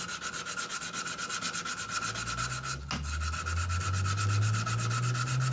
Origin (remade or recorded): recorded